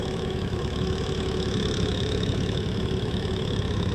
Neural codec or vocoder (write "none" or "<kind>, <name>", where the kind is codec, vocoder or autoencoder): autoencoder, DAC-VAE